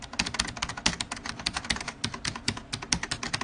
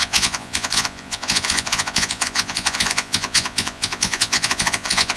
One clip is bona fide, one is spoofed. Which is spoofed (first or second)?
second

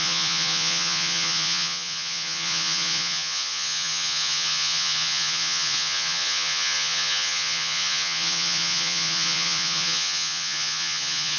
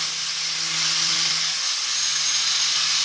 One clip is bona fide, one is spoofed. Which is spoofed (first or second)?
first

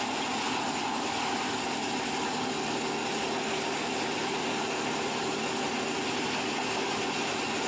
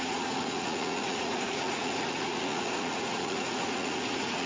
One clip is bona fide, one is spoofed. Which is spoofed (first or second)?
second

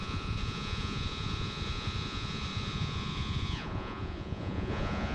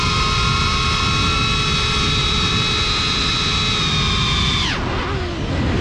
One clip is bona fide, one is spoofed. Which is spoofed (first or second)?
first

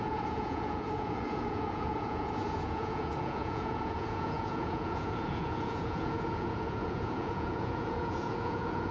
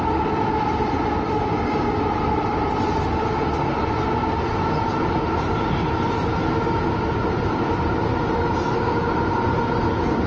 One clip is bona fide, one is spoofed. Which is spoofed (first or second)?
first